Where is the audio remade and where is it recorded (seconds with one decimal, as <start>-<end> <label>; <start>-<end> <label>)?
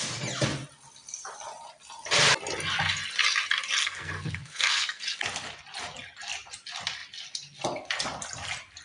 0.0-3.8 recorded; 3.8-5.0 remade; 5.0-8.8 recorded